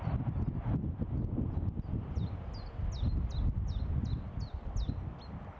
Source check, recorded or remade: recorded